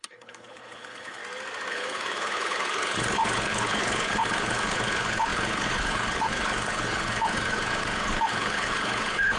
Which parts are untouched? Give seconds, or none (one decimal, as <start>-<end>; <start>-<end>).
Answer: 1.2-1.7